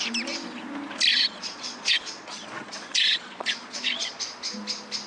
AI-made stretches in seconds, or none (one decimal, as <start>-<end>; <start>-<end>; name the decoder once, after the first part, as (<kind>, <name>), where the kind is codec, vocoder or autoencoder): 1.1-4.2 (vocoder, Vocos)